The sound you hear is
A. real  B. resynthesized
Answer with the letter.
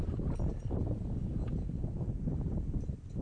A